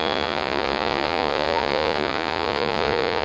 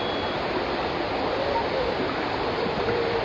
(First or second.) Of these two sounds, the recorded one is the second